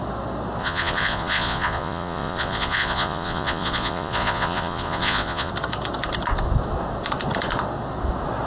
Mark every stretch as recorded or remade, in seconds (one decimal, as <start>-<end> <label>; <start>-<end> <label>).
0.0-0.6 recorded; 0.6-5.5 remade; 5.5-8.5 recorded